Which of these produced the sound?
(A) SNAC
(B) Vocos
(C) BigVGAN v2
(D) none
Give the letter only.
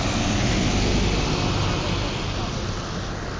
D